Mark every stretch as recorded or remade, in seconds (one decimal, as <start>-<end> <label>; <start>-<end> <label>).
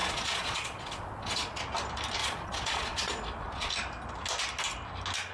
0.0-1.6 remade; 1.6-2.2 recorded; 2.2-3.7 remade; 3.7-5.3 recorded